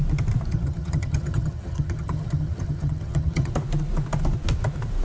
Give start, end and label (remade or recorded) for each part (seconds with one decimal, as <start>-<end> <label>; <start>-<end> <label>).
0.0-0.5 recorded; 0.5-3.5 remade; 3.5-5.0 recorded